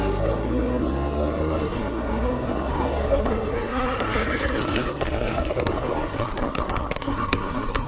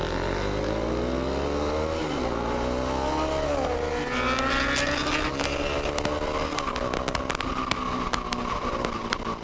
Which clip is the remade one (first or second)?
first